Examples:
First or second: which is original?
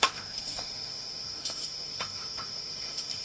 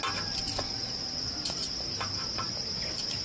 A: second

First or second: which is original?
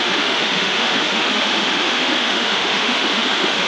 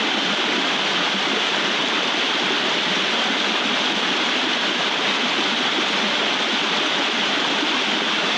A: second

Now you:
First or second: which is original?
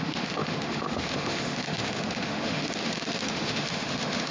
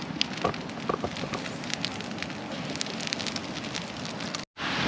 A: second